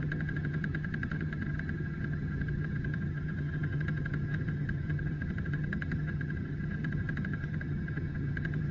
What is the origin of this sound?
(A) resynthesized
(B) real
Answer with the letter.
A